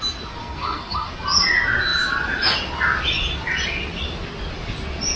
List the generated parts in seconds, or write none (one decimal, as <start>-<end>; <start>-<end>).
0.4-1.1